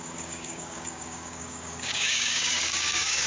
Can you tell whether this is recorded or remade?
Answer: remade